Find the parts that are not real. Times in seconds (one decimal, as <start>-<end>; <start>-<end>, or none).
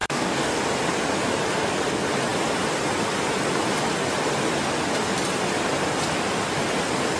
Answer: 0.0-0.6